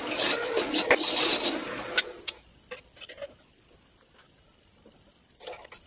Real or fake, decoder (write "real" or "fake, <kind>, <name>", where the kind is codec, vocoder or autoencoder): real